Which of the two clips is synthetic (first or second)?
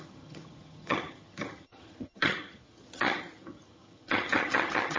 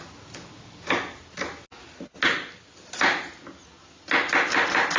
first